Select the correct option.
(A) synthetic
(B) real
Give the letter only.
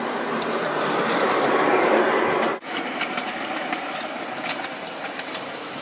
A